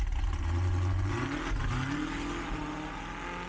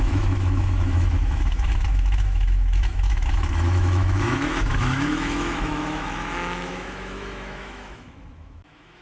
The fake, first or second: second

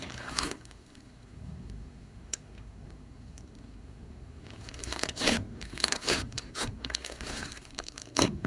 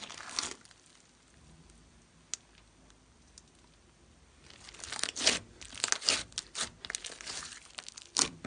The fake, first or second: first